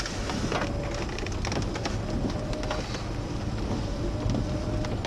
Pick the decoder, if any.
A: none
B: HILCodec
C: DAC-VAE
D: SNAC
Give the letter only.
A